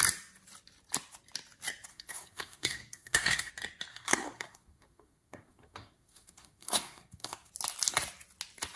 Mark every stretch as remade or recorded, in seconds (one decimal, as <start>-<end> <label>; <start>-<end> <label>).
0.0-1.9 recorded; 1.9-3.5 remade; 3.5-3.9 recorded; 3.9-7.5 remade; 7.5-8.8 recorded